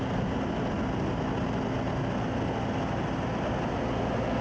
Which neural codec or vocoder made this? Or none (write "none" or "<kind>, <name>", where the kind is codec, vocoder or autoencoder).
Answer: none